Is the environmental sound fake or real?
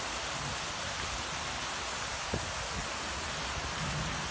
real